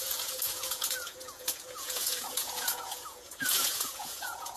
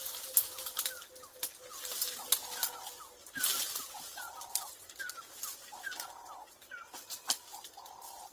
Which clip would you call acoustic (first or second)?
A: second